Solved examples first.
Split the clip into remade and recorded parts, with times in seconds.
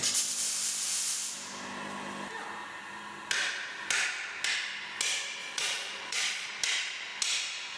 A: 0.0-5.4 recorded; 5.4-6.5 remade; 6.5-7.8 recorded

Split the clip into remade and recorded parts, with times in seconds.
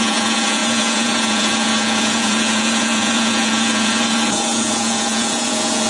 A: 0.0-5.9 remade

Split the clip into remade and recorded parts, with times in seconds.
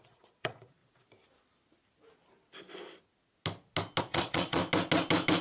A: 0.0-0.8 remade; 0.8-4.0 recorded; 4.0-4.6 remade; 4.6-5.4 recorded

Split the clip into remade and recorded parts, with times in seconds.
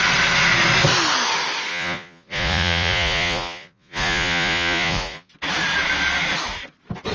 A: 0.0-1.7 recorded; 1.7-5.3 remade; 5.3-7.1 recorded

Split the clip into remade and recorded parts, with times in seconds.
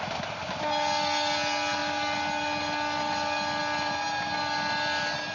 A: 0.0-5.3 recorded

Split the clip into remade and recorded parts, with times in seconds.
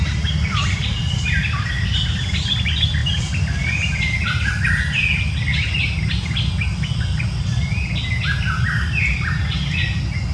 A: 0.0-10.3 recorded